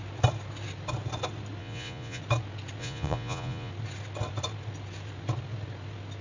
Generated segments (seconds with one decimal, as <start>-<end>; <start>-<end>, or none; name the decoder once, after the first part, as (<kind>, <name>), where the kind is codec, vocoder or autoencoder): 1.6-2.2 (vocoder, Vocos); 2.8-3.7

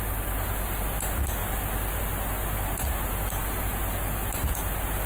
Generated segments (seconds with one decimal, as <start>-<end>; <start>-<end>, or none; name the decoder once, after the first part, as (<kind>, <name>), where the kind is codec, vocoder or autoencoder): none